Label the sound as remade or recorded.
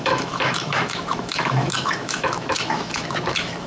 remade